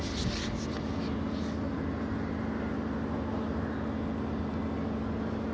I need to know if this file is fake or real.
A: real